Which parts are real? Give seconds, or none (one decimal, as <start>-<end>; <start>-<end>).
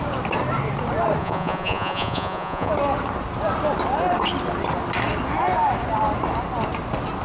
0.0-1.2; 2.7-7.2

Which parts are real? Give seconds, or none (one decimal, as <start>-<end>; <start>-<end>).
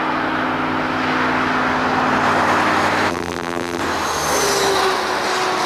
0.0-3.1; 3.8-5.7